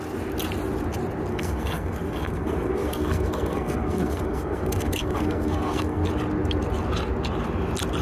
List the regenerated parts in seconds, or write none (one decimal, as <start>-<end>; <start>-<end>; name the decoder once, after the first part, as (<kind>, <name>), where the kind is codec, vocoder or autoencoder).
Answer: 1.3-6.1 (codec, SNAC)